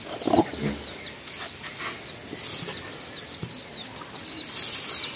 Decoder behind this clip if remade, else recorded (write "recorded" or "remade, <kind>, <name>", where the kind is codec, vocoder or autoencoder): recorded